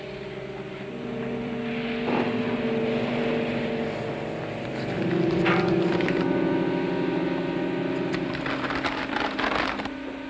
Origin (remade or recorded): recorded